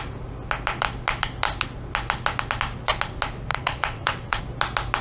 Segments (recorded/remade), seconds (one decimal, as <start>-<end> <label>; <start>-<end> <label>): 0.0-3.5 recorded; 3.5-4.4 remade; 4.4-5.0 recorded